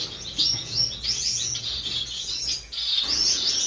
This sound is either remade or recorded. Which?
remade